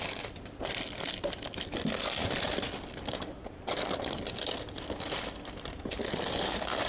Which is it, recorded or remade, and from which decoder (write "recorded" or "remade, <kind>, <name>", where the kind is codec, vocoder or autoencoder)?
recorded